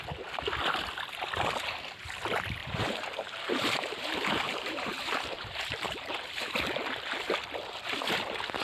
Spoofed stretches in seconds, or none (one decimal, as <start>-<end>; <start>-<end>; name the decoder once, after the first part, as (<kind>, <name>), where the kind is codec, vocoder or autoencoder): 2.6-6.5 (vocoder, BigVGAN v2)